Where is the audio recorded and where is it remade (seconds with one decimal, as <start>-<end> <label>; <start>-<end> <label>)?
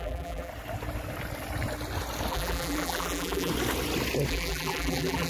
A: 0.0-0.5 remade; 0.5-2.3 recorded; 2.3-3.5 remade; 3.5-4.3 recorded; 4.3-5.3 remade